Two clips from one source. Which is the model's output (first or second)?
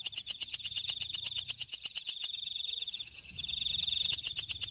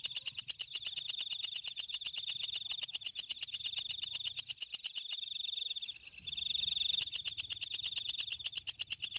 first